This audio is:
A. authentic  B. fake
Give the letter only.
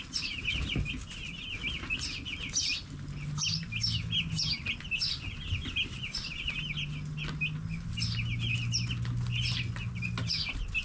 A